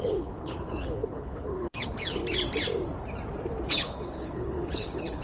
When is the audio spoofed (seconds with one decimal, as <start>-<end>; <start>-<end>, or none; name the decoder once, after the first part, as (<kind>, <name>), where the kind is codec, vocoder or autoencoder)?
0.0-2.2 (codec, HILCodec); 3.7-5.2